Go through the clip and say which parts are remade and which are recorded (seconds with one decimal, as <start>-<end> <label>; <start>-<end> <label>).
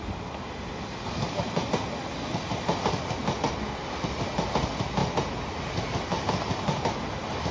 0.0-7.5 recorded